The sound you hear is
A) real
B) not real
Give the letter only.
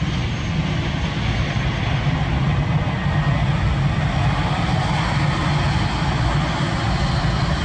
A